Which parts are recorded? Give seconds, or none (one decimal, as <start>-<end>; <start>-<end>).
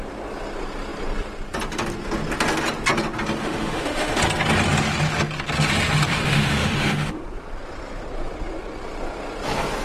0.0-3.4; 4.2-6.1; 7.2-9.8